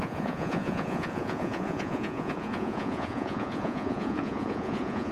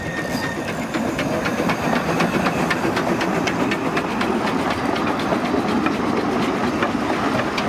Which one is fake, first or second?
first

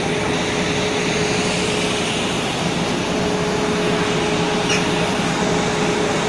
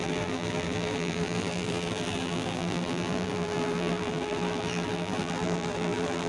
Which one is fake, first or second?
second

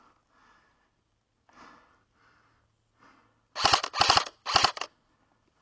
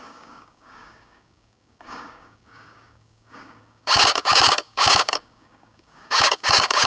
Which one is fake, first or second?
second